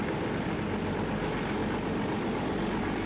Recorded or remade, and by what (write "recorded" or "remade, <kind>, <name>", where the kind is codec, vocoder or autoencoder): recorded